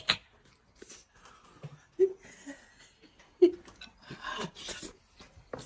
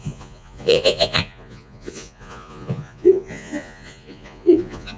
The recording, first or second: first